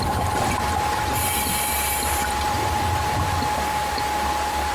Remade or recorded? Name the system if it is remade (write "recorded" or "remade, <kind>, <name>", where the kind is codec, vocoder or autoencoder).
remade, vocoder, BigVGAN v2